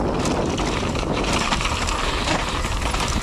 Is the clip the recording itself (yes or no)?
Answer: yes